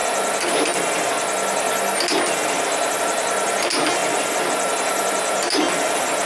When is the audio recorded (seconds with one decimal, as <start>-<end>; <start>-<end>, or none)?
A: 0.0-6.3